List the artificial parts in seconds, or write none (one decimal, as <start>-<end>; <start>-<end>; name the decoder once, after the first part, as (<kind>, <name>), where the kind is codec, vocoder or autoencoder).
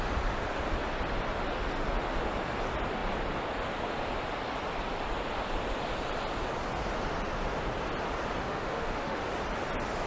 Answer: 8.4-9.2 (autoencoder, DAC-VAE)